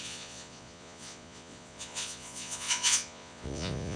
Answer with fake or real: fake